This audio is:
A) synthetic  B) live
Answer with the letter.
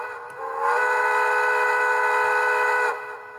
B